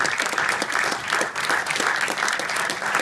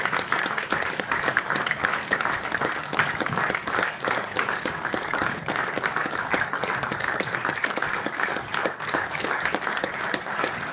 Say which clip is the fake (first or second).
second